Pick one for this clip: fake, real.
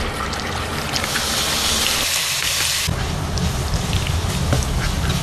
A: real